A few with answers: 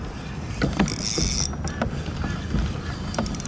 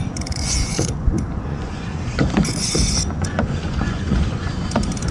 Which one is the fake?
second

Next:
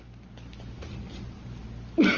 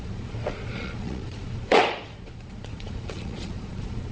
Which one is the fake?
second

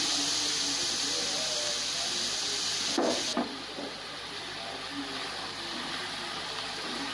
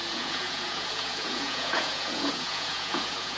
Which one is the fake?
second